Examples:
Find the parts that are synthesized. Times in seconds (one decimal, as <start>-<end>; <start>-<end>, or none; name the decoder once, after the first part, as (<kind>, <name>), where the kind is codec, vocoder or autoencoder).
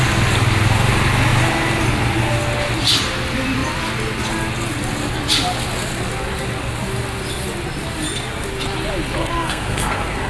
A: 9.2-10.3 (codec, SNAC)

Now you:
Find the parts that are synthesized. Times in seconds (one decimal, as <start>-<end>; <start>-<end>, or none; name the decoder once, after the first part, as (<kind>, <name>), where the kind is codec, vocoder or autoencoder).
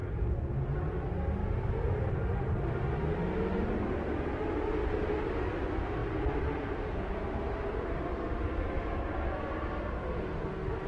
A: 0.0-0.9 (vocoder, Vocos)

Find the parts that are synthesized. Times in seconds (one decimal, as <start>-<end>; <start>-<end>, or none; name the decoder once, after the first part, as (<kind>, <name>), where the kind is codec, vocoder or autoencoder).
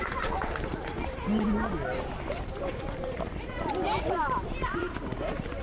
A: 0.0-1.2 (vocoder, BigVGAN v2); 2.3-5.6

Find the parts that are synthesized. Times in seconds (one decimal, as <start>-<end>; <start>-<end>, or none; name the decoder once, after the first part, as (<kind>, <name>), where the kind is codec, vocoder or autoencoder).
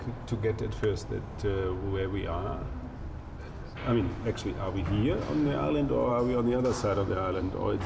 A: none